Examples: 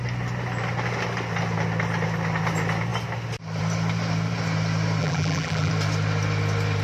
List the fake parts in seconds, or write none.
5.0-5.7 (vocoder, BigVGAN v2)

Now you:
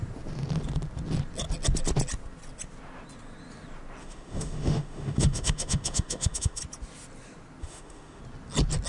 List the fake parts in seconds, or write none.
4.0-6.6 (autoencoder, DAC-VAE); 7.6-8.2

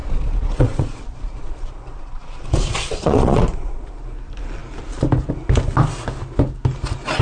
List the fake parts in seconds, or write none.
0.0-3.9 (vocoder, Vocos)